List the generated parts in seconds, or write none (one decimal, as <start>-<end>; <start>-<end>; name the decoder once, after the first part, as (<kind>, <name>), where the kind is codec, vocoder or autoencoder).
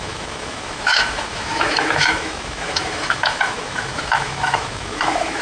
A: 0.0-5.4 (autoencoder, DAC-VAE)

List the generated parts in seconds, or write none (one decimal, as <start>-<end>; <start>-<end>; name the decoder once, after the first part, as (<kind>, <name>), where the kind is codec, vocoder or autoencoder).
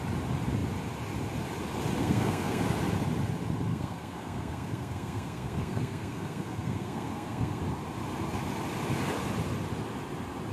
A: 2.0-2.6 (codec, SNAC); 3.7-7.6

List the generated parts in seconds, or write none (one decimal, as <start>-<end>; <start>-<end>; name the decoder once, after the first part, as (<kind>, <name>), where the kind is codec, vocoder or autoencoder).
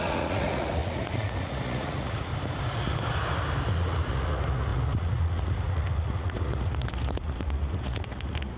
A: 0.0-2.3 (vocoder, Vocos); 3.7-8.6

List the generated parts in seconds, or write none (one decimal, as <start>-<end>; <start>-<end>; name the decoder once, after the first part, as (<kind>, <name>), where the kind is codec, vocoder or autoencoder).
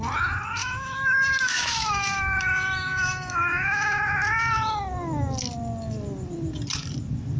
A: 0.6-4.0 (autoencoder, DAC-VAE)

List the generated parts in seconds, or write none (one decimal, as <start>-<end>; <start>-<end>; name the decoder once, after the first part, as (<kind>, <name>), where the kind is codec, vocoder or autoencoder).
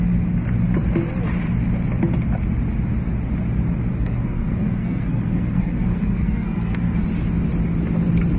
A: 3.9-7.0 (codec, SNAC)